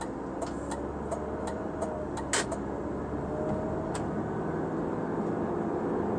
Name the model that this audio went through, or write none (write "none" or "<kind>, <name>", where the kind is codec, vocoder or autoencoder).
none